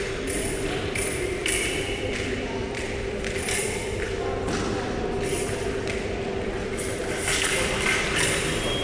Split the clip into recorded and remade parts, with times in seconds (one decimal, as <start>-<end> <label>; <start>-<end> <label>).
0.0-1.4 recorded; 1.4-5.0 remade; 5.0-8.8 recorded